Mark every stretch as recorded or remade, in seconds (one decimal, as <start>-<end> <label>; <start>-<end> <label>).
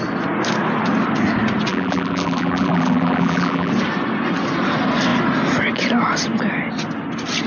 0.0-1.7 recorded; 1.7-3.7 remade; 3.7-7.5 recorded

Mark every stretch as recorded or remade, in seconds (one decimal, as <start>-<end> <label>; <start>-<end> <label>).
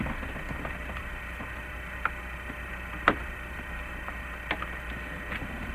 0.0-1.0 recorded; 1.0-4.4 remade; 4.4-5.7 recorded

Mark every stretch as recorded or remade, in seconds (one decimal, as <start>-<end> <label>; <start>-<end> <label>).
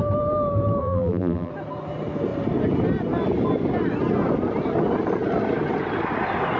0.0-0.8 recorded; 0.8-1.5 remade; 1.5-6.6 recorded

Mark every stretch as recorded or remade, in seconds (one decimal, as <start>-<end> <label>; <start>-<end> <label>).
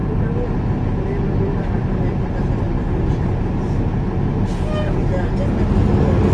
0.0-3.8 remade; 3.8-6.3 recorded